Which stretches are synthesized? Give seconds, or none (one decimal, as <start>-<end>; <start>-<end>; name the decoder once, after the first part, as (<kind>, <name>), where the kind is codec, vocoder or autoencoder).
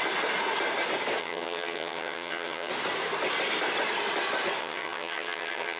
1.2-2.7 (vocoder, HiFi-GAN); 4.6-5.8